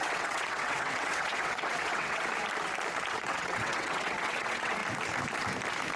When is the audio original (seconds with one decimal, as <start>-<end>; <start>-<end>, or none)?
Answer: 2.3-3.1; 4.8-6.0